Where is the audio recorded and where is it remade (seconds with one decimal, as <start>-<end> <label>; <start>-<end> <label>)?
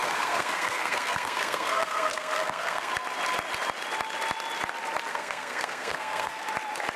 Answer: 0.0-2.9 remade; 2.9-5.1 recorded; 5.1-6.5 remade; 6.5-7.0 recorded